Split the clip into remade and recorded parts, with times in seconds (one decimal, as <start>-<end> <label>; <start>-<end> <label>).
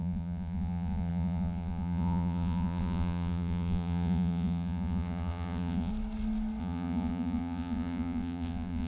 0.0-5.9 remade; 5.9-6.6 recorded; 6.6-8.9 remade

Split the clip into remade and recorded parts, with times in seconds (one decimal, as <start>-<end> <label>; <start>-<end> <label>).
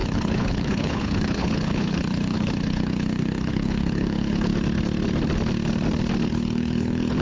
0.0-4.5 remade; 4.5-6.3 recorded; 6.3-7.2 remade